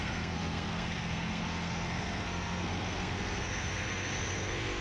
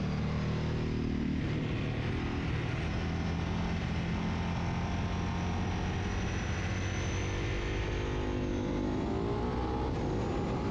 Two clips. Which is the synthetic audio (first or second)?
first